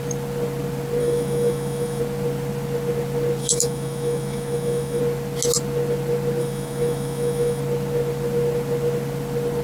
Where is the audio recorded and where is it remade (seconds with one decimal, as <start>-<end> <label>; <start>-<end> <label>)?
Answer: 0.0-1.0 recorded; 1.0-2.0 remade; 2.0-3.4 recorded; 3.4-5.0 remade; 5.0-6.4 recorded; 6.4-7.6 remade; 7.6-9.6 recorded